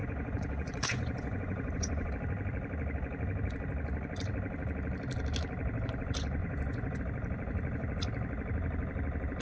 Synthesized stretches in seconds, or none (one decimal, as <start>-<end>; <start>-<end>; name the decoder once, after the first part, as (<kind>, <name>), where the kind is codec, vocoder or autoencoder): 0.0-2.1 (vocoder, Vocos); 6.4-7.0